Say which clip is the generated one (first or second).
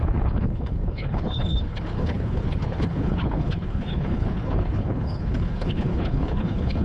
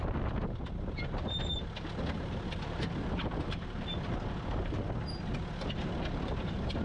first